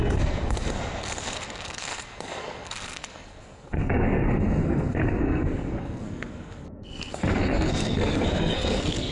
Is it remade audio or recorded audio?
remade